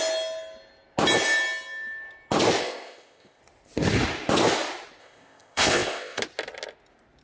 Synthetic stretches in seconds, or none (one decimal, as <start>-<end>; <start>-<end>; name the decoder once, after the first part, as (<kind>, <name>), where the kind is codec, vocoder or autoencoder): 2.6-3.4 (codec, ZipCodec); 5.0-6.2